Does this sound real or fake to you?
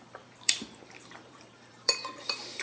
fake